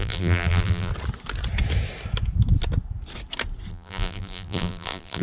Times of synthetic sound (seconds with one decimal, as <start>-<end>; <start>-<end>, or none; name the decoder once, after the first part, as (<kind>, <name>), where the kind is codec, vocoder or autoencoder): 0.0-0.9 (vocoder, BigVGAN v2); 3.7-5.2